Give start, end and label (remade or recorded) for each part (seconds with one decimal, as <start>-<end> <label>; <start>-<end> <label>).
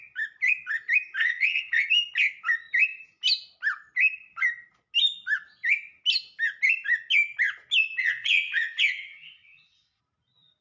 0.0-1.2 recorded; 1.2-1.9 remade; 1.9-8.0 recorded; 8.0-10.0 remade; 10.0-10.6 recorded